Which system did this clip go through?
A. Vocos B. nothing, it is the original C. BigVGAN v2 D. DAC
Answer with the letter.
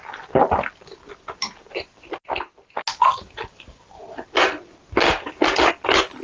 B